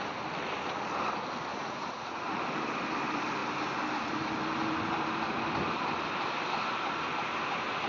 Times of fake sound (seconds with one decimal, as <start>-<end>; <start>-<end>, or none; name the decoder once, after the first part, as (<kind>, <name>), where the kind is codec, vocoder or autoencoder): 1.5-2.4 (vocoder, Vocos)